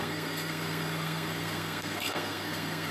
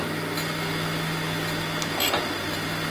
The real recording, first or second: second